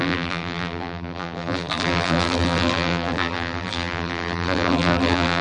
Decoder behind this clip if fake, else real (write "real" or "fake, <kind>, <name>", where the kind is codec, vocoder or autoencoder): fake, vocoder, BigVGAN v2